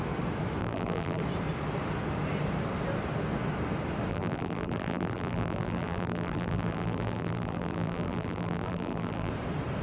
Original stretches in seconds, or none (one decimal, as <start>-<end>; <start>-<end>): 0.0-0.6; 1.2-4.1; 9.3-9.8

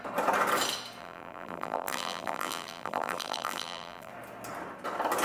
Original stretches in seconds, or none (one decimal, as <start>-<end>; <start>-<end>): 0.0-1.0; 4.1-5.2

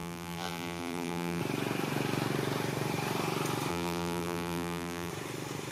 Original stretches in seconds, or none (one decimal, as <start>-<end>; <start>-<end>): 1.4-3.7; 5.1-5.7